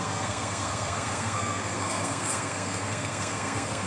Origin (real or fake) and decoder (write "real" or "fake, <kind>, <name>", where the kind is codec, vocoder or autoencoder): fake, codec, SNAC